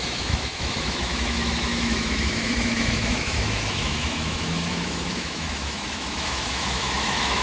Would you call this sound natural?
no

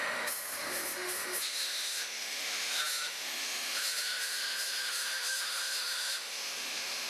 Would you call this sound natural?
no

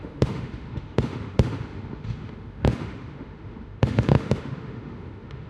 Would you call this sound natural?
no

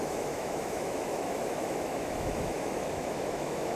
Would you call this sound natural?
no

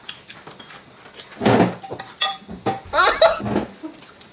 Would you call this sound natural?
yes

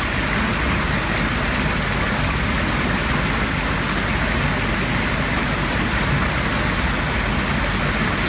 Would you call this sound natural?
yes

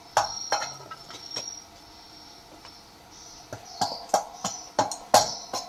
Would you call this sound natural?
yes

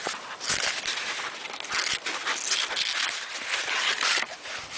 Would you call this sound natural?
yes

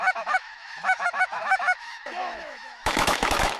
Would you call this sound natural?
no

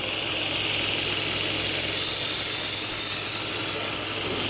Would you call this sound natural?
yes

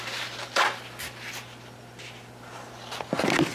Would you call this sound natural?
yes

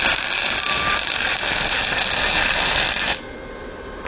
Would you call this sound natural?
yes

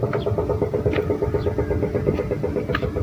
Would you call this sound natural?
yes